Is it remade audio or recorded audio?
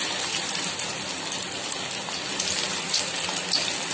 recorded